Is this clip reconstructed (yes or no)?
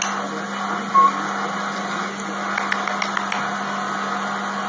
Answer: no